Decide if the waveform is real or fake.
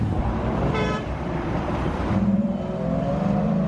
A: fake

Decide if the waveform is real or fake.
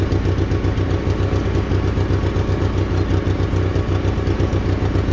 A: real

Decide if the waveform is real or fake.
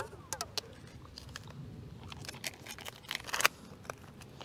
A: real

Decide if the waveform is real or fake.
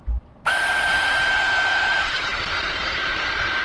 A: fake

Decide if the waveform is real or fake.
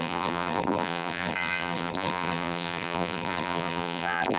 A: fake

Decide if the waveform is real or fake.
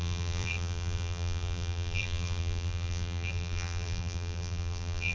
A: fake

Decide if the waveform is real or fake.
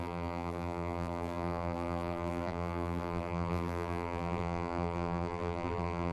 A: fake